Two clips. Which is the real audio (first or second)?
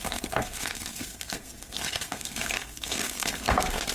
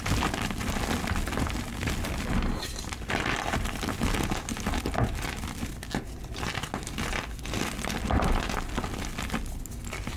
second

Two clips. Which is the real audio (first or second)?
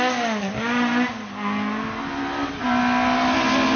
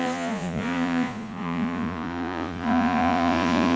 first